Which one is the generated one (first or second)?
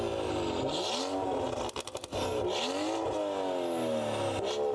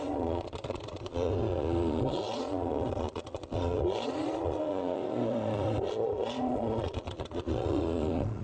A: second